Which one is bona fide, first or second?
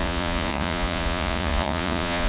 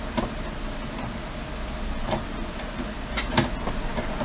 second